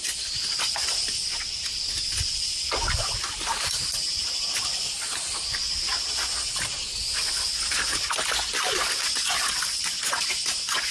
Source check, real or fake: real